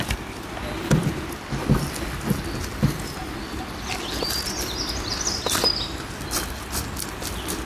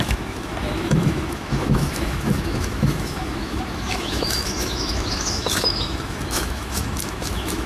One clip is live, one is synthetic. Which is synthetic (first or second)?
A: second